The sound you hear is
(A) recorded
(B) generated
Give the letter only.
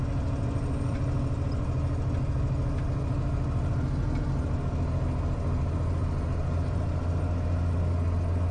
A